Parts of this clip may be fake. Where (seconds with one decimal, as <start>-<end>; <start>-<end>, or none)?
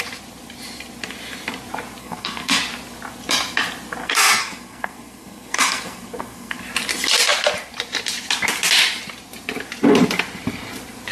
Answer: 2.0-2.6; 4.0-6.6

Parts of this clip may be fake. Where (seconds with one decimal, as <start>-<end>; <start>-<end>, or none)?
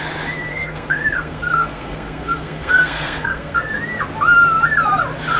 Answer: 0.5-3.7